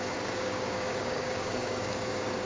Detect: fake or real fake